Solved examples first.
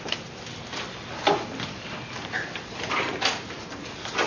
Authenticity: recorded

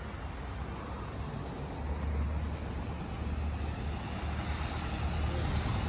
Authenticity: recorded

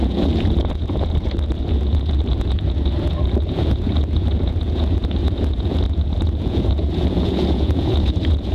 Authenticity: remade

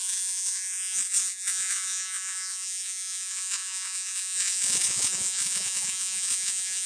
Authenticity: remade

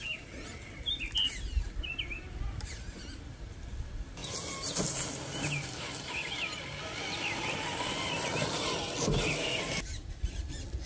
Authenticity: recorded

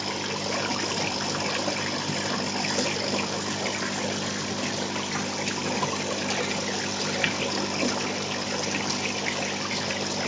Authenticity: recorded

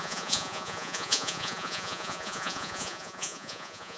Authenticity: remade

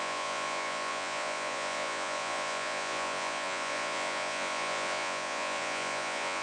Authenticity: remade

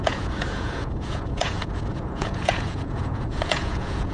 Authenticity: remade